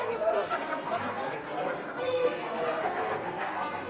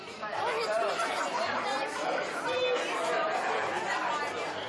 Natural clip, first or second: second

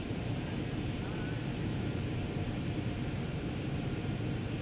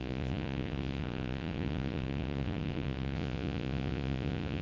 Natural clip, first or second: first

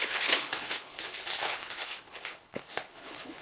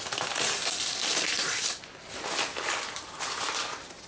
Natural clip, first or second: second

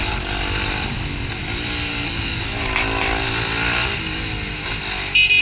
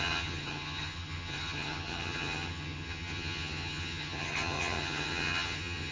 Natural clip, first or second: first